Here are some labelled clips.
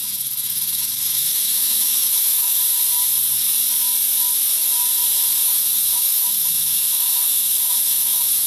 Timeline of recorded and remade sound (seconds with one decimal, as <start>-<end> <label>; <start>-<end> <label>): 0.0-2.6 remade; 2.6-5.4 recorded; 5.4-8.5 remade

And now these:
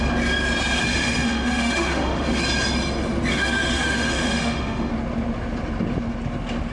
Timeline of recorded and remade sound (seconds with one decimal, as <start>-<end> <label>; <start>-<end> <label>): 0.0-0.9 recorded; 0.9-2.4 remade; 2.4-3.3 recorded; 3.3-4.9 remade; 4.9-6.7 recorded

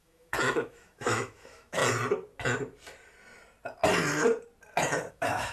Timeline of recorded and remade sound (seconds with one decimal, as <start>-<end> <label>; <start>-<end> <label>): 0.0-1.8 remade; 1.8-5.1 recorded; 5.1-5.5 remade